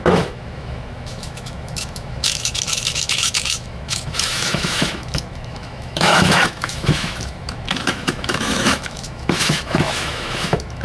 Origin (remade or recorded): remade